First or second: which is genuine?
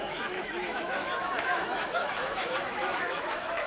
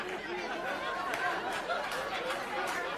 second